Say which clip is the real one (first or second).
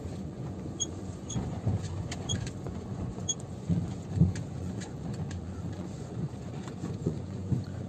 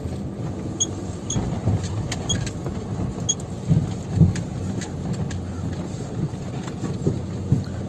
second